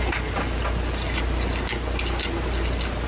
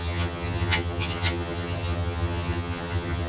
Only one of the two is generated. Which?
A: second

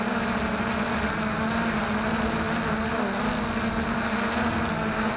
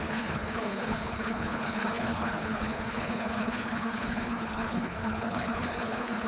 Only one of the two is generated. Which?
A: second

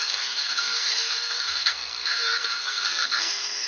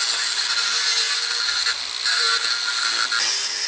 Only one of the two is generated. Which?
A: first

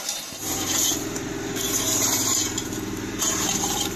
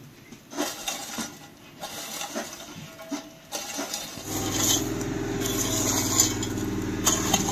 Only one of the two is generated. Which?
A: first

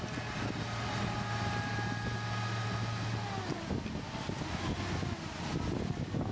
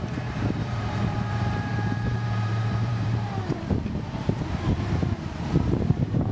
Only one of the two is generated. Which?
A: second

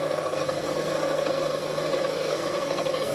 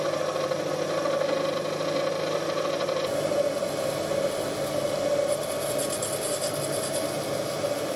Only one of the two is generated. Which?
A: first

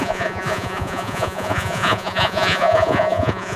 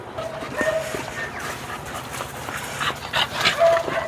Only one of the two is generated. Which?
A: first